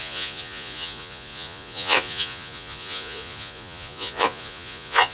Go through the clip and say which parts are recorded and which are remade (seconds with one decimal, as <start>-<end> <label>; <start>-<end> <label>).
0.0-5.1 remade